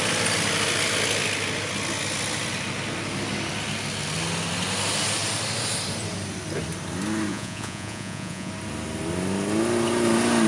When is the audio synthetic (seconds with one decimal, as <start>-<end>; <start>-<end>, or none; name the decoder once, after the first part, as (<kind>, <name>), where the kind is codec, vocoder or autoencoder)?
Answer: 7.3-8.5 (vocoder, Vocos)